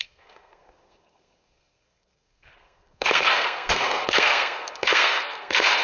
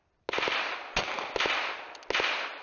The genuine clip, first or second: second